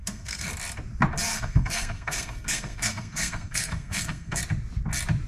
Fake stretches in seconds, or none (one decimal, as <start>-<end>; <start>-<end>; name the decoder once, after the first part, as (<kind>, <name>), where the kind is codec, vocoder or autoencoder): 0.0-0.5 (codec, SNAC); 1.3-4.4